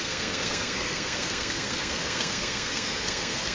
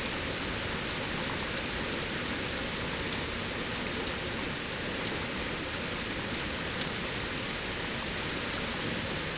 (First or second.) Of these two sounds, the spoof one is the first